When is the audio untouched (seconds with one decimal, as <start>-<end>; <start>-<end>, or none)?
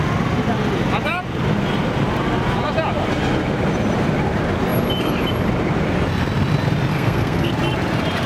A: 0.0-6.9; 7.5-8.3